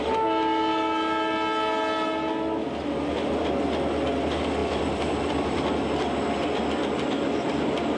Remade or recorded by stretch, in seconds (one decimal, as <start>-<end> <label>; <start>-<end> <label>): 0.0-4.6 recorded; 4.6-5.7 remade; 5.7-8.0 recorded